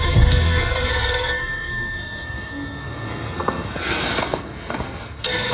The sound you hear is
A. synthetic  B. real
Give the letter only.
A